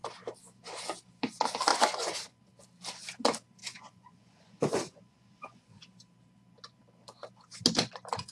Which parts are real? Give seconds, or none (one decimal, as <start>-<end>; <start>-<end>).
0.0-1.7; 2.4-3.6; 5.8-8.3